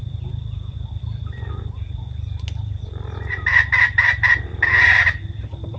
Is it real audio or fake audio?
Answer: real